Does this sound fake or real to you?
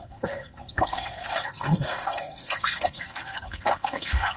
fake